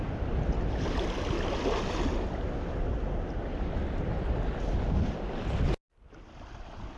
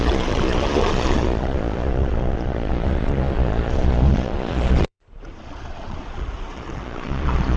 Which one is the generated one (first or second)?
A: second